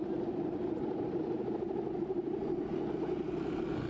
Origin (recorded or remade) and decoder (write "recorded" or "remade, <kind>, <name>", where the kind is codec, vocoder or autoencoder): recorded